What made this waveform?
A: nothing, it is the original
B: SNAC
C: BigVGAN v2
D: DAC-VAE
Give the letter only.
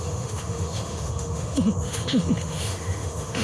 D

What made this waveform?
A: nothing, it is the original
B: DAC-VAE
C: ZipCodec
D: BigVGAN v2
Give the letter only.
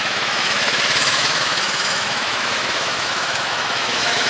B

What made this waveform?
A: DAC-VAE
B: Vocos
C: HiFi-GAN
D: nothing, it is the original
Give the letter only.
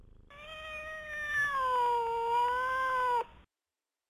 D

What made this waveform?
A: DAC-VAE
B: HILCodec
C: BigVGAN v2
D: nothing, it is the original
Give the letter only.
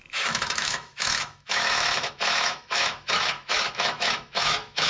A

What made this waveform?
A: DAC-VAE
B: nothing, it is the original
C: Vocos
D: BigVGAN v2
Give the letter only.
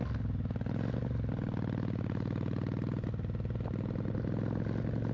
B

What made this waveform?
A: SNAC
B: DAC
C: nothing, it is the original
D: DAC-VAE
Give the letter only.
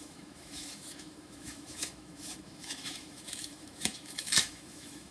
D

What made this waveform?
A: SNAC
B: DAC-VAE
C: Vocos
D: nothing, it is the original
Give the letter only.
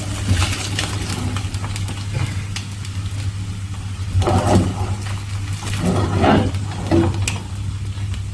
D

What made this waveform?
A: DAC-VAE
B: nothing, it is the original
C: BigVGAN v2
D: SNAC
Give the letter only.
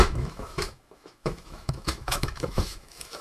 A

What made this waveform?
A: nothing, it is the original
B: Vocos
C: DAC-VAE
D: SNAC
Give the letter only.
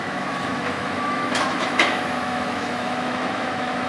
C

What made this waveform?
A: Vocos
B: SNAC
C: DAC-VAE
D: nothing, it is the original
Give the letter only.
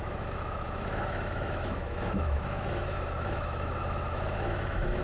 C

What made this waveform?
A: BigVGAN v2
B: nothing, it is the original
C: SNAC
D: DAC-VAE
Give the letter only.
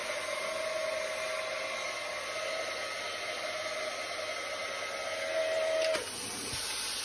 B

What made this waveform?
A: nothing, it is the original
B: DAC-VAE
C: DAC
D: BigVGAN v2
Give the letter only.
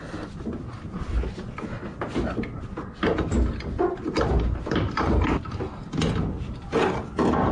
A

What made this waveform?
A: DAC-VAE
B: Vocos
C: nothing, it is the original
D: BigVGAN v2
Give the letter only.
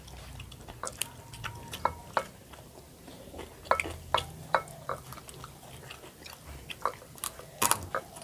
C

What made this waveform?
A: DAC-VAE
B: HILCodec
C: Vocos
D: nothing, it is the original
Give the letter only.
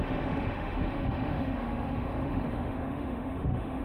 A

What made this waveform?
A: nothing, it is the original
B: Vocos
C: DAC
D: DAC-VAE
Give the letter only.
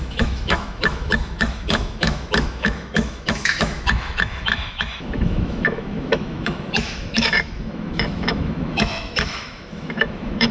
D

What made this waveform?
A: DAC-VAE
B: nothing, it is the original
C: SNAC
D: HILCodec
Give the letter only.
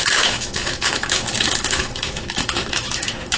A